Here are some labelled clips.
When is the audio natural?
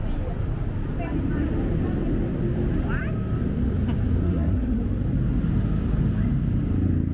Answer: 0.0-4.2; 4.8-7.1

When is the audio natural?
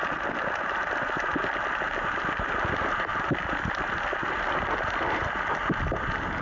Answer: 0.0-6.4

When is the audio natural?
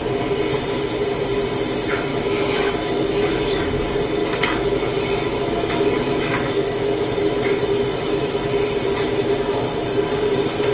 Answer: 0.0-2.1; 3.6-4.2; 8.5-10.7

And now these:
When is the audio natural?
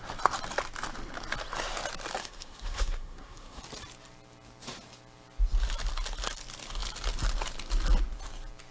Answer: 0.0-2.2; 3.6-8.7